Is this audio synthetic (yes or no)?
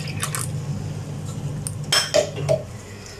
no